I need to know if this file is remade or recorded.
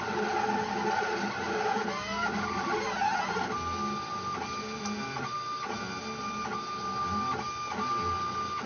recorded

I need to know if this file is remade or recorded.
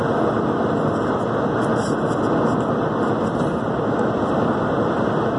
recorded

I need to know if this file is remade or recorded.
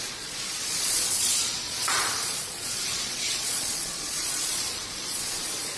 remade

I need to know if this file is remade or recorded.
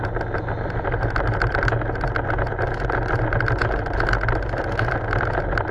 recorded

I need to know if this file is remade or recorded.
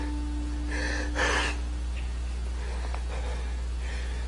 recorded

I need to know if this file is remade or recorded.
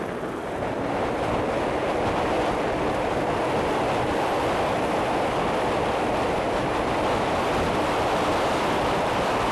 recorded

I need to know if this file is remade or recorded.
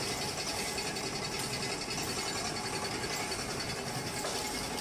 recorded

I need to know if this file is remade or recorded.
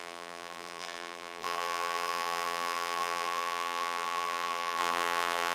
remade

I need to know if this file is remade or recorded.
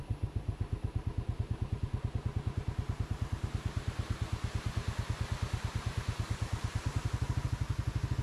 recorded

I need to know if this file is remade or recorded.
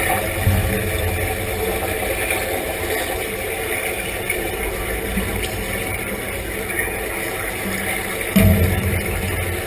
recorded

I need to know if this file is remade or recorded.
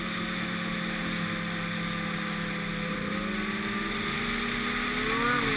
recorded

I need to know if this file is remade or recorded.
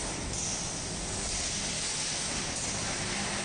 recorded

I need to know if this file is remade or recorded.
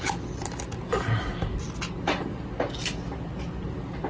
recorded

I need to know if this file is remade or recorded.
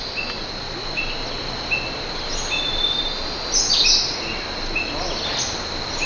recorded